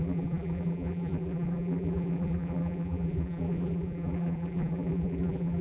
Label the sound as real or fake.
fake